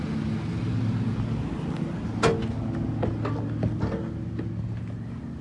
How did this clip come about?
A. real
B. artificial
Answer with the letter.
A